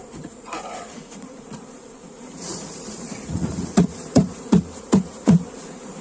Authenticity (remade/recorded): remade